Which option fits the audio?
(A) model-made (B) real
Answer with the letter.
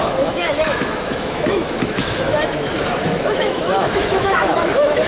A